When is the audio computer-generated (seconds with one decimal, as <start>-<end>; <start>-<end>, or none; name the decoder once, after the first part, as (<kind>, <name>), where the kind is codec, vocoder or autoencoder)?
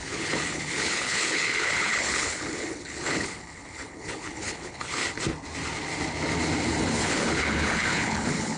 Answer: 0.0-5.0 (codec, HILCodec); 6.8-8.6